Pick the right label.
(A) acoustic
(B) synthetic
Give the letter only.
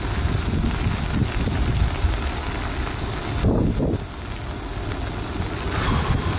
A